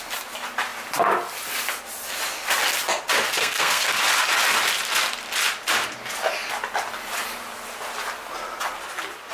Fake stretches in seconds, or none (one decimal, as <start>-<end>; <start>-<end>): 3.4-4.0